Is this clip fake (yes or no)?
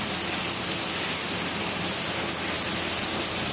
no